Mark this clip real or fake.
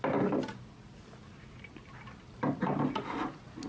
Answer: real